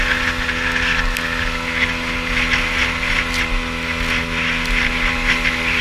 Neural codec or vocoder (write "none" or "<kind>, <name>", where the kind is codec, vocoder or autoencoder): none